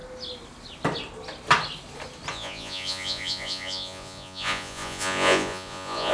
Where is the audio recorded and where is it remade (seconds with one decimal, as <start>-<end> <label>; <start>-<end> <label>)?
0.0-2.3 recorded; 2.3-6.1 remade